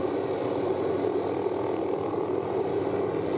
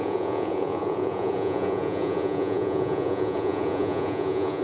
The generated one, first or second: second